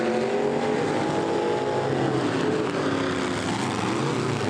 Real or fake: real